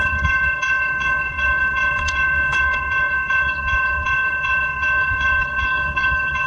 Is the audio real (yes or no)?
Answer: no